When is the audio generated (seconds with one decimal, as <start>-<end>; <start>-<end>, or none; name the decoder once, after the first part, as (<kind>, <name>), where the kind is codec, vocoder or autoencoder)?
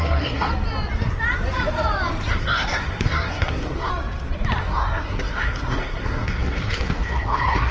0.0-0.5 (codec, SNAC); 2.3-3.9; 4.6-7.7